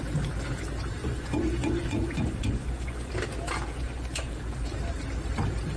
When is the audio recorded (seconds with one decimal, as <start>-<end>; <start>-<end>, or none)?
0.0-1.0; 3.1-3.7; 4.3-5.8